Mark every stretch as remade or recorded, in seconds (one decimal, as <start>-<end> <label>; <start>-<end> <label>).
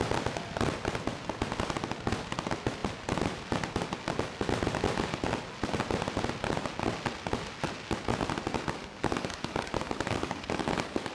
0.0-8.8 recorded; 8.8-11.1 remade